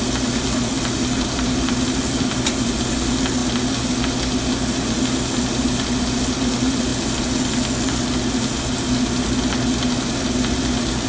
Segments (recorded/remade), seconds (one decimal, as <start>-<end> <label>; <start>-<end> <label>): 0.0-11.1 recorded